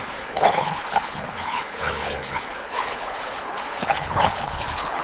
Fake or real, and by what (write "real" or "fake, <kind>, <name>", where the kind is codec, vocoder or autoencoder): fake, codec, HILCodec